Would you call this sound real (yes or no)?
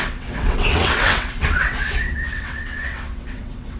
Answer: no